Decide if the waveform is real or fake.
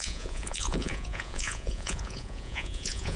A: fake